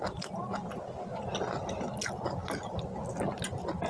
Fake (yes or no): no